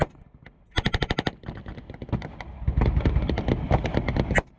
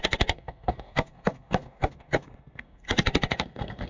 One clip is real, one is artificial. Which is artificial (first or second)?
second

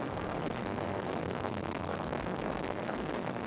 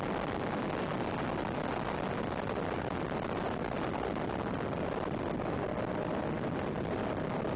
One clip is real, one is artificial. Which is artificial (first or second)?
first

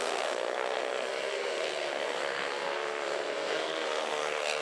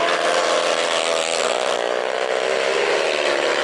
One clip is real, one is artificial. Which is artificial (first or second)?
first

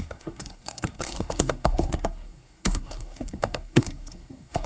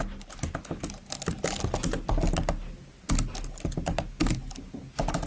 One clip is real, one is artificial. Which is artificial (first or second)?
first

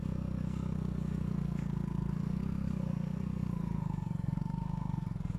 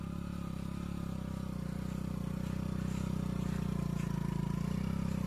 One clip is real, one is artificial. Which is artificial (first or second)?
first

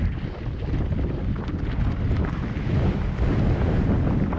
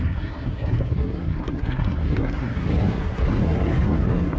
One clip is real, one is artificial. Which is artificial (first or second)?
second